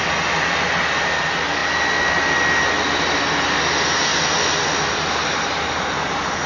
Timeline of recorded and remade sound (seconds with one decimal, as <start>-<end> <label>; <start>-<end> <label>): 0.0-6.5 recorded